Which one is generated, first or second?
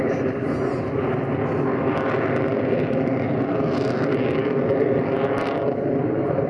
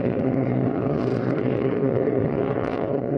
second